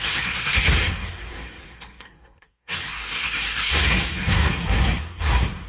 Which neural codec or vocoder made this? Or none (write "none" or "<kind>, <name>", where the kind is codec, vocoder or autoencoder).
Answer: codec, SNAC